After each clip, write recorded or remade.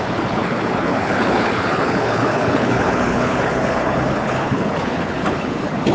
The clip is remade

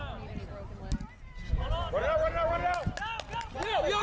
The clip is recorded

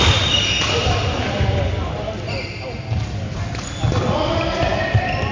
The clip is recorded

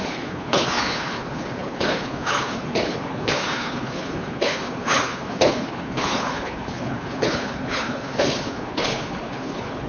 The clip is remade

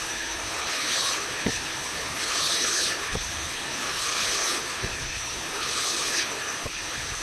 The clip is remade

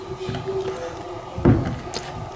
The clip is recorded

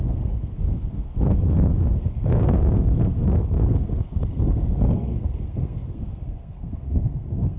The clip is remade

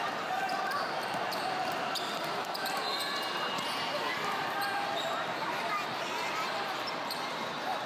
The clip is remade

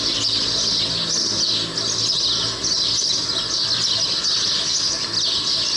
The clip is recorded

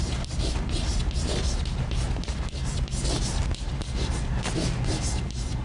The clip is recorded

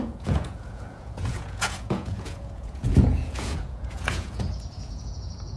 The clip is remade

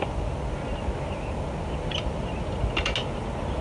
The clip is recorded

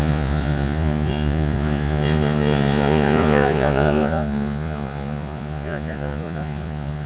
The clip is remade